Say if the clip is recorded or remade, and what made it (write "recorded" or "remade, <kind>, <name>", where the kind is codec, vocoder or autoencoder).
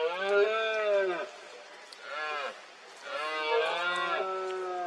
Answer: recorded